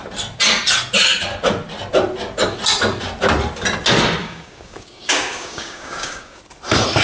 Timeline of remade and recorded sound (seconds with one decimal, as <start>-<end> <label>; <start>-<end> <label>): 0.0-4.2 recorded; 4.2-6.4 remade; 6.4-7.0 recorded